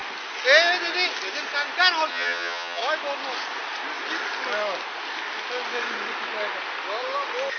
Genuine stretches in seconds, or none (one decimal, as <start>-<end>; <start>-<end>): 0.0-2.1; 2.8-7.6